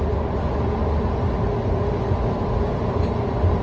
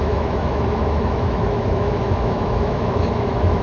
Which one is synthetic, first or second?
second